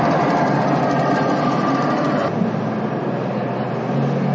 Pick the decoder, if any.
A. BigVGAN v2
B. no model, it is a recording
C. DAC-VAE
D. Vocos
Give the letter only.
B